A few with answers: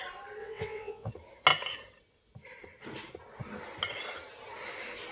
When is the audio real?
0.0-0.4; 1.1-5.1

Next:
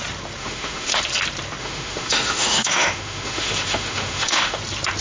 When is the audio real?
0.0-0.4; 1.0-1.6; 4.6-5.0

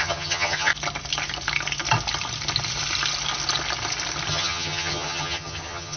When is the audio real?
0.7-4.3

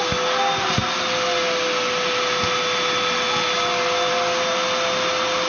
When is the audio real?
0.0-5.5

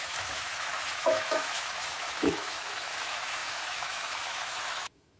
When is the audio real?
none

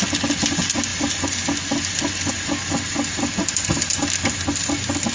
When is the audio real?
0.0-5.1

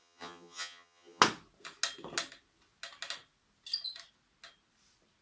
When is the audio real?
1.2-5.2

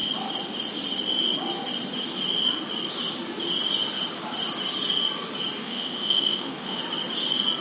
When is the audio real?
0.0-5.6; 6.8-7.6